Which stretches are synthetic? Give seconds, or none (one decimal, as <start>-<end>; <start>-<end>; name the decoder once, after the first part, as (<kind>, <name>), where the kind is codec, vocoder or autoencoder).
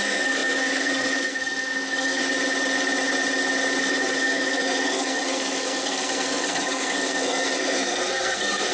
0.0-2.2 (codec, SNAC); 3.8-8.7